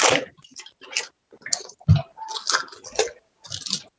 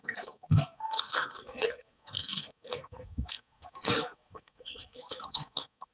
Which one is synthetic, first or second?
second